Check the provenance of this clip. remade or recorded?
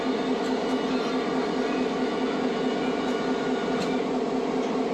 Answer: recorded